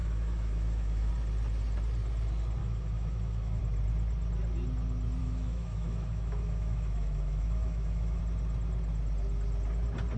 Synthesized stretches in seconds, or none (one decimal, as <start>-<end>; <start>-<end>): 0.0-1.1; 2.6-3.6; 5.2-8.2